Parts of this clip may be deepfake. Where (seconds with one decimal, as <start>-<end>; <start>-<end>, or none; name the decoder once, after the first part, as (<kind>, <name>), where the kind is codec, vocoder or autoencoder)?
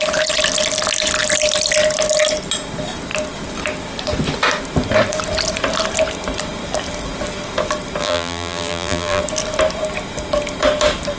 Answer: 8.0-9.2 (vocoder, BigVGAN v2)